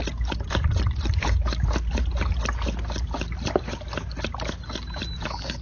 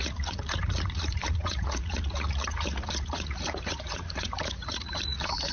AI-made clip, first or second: second